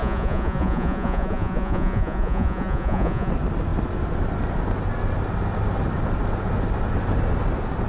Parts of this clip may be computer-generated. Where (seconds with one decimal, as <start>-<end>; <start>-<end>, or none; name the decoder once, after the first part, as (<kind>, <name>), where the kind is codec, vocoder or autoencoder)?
0.0-3.3 (vocoder, Vocos)